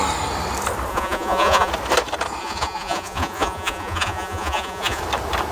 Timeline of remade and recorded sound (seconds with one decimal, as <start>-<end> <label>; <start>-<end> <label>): 0.0-0.9 recorded; 0.9-1.7 remade; 1.7-2.4 recorded; 2.4-5.0 remade; 5.0-5.5 recorded